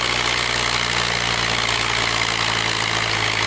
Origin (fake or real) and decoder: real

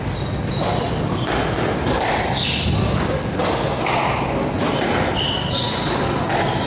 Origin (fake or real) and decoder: real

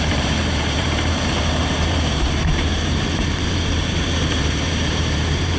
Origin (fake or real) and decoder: fake, vocoder, BigVGAN v2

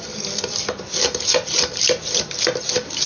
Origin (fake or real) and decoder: fake, vocoder, BigVGAN v2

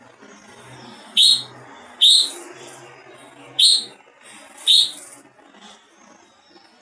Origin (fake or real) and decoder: real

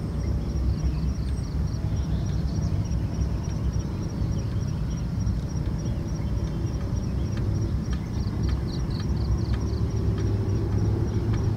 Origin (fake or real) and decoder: fake, vocoder, BigVGAN v2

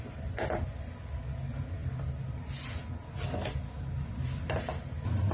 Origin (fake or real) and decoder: real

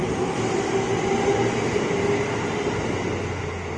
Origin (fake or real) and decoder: real